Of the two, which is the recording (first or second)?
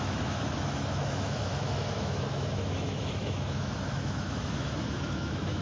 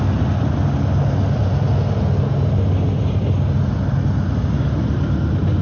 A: second